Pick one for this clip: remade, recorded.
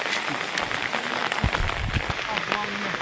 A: recorded